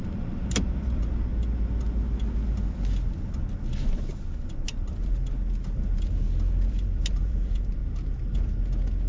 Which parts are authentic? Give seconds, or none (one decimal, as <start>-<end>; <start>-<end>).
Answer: 1.3-6.0; 7.8-9.1

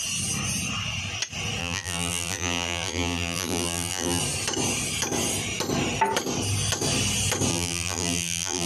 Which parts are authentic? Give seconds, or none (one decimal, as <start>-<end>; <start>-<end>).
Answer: 0.0-1.6; 4.2-7.5

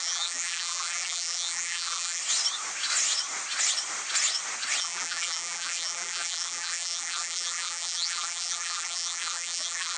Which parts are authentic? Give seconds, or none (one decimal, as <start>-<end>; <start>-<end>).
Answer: 2.2-4.8

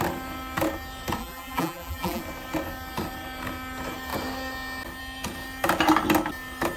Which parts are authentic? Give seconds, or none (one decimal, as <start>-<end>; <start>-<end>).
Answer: 0.0-1.2; 2.2-6.8

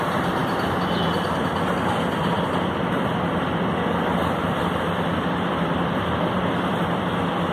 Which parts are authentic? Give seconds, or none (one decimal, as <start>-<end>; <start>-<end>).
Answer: 0.0-7.5

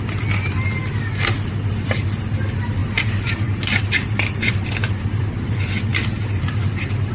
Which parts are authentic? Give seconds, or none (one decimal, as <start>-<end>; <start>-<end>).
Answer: 0.0-2.8; 4.9-7.1

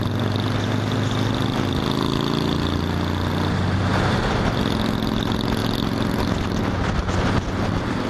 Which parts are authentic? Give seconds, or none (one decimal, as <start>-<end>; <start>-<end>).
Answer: 0.0-8.1

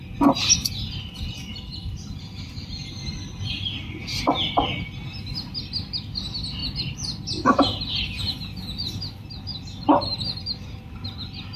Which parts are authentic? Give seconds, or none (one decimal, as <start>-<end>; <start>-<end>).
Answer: 0.0-8.8; 10.5-11.6